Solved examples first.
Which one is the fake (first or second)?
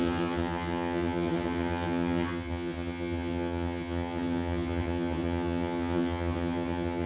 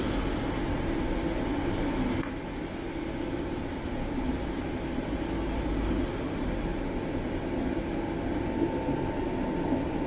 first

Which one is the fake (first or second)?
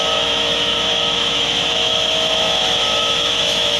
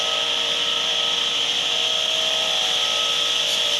first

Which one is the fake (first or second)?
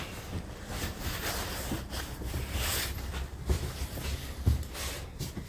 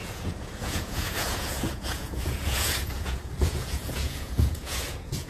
second